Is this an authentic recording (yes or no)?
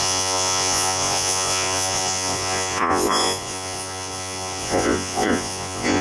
no